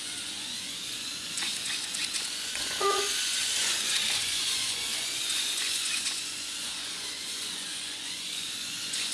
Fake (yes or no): yes